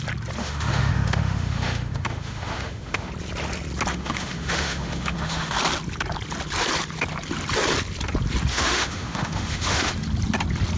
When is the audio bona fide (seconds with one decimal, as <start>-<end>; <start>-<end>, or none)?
0.0-0.4; 3.1-3.9; 5.5-8.5; 9.9-10.8